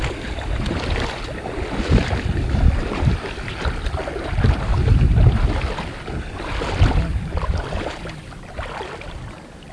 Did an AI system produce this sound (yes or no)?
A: no